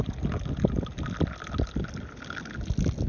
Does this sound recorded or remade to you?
recorded